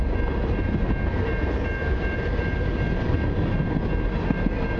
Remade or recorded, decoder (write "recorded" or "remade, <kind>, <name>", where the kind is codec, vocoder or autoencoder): recorded